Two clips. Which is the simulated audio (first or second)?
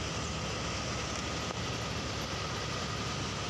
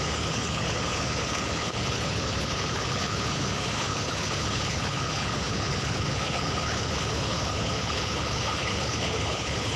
second